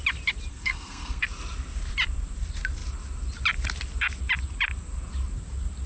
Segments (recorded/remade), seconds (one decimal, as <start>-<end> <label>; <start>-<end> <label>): 0.0-0.5 recorded; 0.5-1.2 remade; 1.2-5.9 recorded